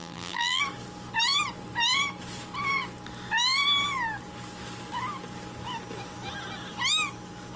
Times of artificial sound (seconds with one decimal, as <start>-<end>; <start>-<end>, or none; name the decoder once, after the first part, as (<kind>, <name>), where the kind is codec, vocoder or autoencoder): 0.0-0.6 (vocoder, BigVGAN v2)